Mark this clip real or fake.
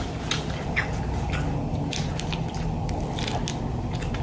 real